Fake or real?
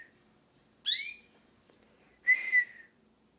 real